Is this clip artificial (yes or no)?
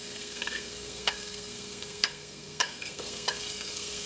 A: yes